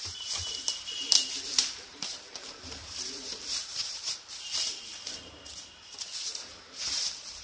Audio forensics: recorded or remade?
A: remade